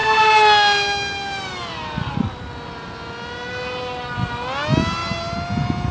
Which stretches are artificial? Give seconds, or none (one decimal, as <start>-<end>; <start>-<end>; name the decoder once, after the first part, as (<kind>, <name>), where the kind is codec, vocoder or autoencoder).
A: none